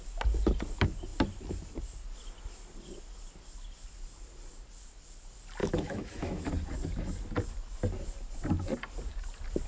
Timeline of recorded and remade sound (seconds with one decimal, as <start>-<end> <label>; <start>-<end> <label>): 0.0-5.6 recorded; 5.6-6.5 remade; 6.5-9.7 recorded